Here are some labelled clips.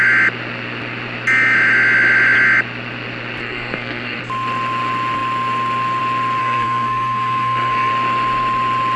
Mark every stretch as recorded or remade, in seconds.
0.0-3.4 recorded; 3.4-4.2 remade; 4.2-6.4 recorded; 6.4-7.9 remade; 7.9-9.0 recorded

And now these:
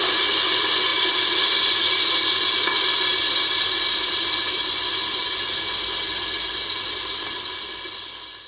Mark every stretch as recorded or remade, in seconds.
0.0-8.5 recorded

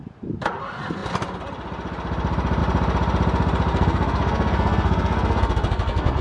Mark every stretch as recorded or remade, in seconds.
0.0-3.7 recorded; 3.7-6.2 remade

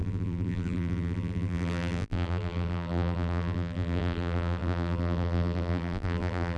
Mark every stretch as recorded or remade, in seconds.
0.0-6.6 remade

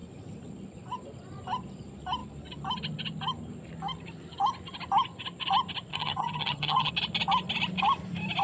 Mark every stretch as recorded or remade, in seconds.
0.0-5.9 recorded; 5.9-6.9 remade; 6.9-8.4 recorded

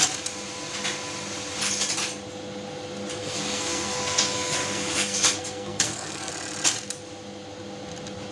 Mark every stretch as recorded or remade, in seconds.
0.0-3.2 recorded; 3.2-6.3 remade; 6.3-8.3 recorded